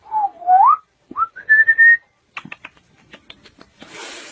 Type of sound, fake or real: real